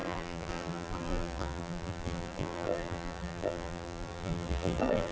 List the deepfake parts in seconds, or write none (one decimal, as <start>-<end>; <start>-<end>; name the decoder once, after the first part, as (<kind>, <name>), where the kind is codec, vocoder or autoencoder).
0.0-5.1 (vocoder, BigVGAN v2)